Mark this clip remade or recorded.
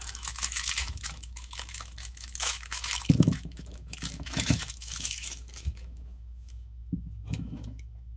remade